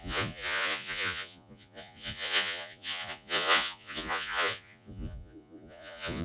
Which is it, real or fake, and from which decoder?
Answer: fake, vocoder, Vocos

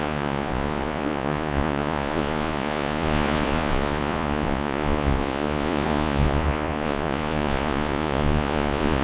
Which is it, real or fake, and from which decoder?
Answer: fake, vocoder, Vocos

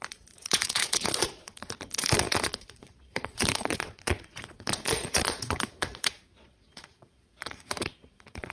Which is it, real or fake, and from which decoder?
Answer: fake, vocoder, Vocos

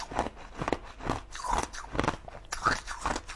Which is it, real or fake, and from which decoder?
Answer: real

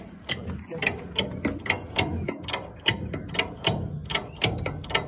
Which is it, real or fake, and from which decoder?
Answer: real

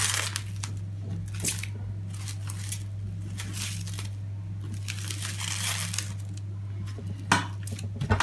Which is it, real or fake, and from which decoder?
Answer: real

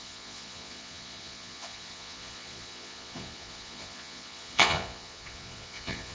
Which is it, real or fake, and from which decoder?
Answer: fake, vocoder, Vocos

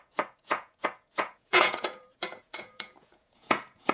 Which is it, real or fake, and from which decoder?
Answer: fake, vocoder, Vocos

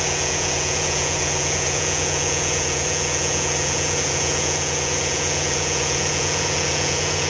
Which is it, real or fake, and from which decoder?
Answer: fake, vocoder, Vocos